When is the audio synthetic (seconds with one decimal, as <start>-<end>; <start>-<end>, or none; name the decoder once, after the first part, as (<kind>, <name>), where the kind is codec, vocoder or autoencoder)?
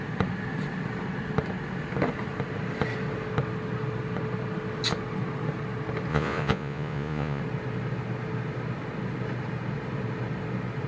6.1-7.4 (vocoder, Vocos)